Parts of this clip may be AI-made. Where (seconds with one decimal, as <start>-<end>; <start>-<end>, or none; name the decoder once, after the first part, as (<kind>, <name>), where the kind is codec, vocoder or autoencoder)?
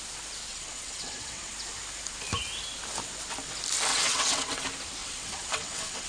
0.5-1.5 (vocoder, WaveNeXt); 3.9-4.6; 5.0-6.1